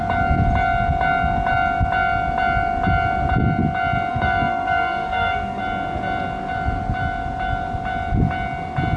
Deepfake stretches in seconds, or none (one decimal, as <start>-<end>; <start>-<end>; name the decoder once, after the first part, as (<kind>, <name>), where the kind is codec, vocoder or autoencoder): 4.1-5.6 (codec, SNAC)